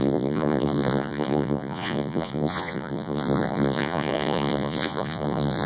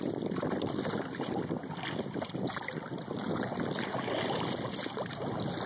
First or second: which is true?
second